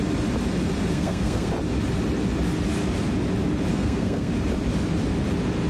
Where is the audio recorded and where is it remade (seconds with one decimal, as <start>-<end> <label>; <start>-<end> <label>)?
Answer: 0.0-0.9 recorded; 0.9-1.5 remade; 1.5-3.7 recorded; 3.7-4.3 remade; 4.3-5.7 recorded